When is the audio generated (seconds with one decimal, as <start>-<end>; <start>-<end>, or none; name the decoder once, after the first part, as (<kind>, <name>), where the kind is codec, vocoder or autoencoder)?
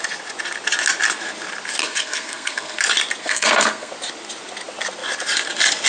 1.8-2.8 (codec, SNAC); 3.2-3.9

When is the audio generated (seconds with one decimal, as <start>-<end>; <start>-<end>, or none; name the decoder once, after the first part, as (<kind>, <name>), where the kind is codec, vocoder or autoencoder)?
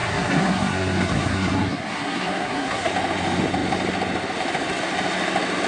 0.0-2.9 (codec, SNAC)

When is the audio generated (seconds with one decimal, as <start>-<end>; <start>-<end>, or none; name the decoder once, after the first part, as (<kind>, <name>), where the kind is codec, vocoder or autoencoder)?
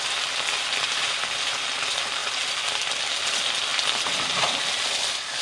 none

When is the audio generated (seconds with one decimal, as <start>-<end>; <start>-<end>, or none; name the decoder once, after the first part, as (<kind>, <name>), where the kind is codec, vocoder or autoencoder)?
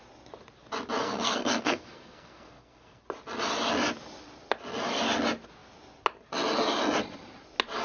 1.0-3.0 (codec, SNAC)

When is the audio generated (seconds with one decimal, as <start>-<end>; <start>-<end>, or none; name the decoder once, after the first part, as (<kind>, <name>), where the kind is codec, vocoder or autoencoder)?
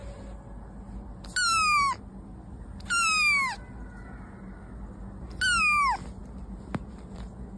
none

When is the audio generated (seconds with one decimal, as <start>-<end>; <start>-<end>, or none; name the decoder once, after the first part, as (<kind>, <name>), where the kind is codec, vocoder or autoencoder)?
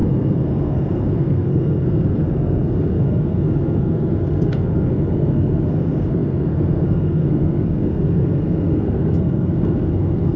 0.0-10.4 (codec, SNAC)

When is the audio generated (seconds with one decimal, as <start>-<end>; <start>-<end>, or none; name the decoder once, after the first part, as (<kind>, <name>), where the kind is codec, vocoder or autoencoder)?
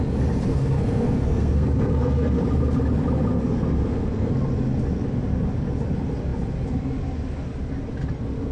0.5-2.4 (codec, SNAC); 3.3-4.3